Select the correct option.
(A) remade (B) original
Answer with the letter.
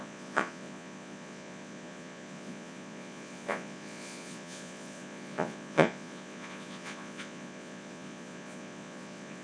A